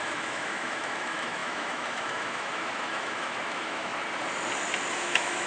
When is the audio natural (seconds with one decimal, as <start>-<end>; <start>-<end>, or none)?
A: 3.9-4.9